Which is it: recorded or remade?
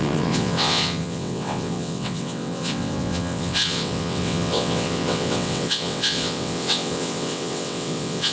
remade